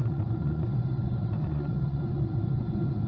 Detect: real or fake fake